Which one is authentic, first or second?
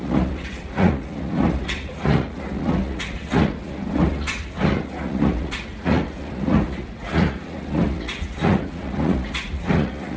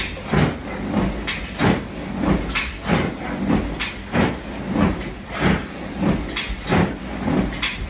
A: second